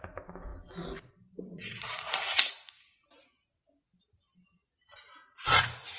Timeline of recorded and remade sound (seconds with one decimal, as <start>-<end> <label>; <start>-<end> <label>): 0.0-1.5 recorded; 1.5-2.7 remade; 2.7-6.0 recorded